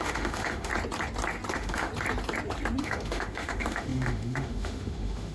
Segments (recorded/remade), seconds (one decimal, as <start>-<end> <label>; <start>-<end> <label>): 0.0-0.7 remade; 0.7-1.5 recorded; 1.5-1.9 remade; 1.9-2.8 recorded; 2.8-5.3 remade